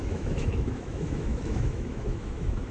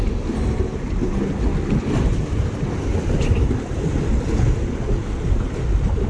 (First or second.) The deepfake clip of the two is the first